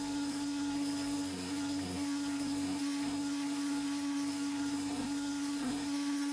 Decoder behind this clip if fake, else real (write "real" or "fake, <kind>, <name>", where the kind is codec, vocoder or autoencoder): fake, codec, SNAC